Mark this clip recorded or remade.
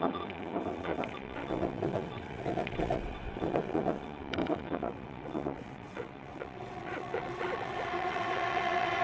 remade